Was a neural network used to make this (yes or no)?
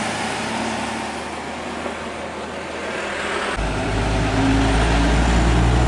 no